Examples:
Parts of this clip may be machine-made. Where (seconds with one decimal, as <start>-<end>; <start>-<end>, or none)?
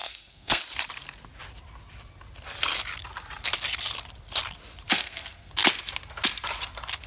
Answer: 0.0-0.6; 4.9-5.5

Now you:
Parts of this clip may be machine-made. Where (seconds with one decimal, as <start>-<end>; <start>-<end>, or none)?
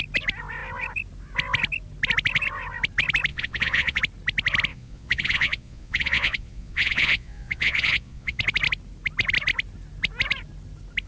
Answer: 3.3-4.0; 4.7-8.4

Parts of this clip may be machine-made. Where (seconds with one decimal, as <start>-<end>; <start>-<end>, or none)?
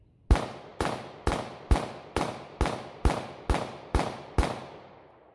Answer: none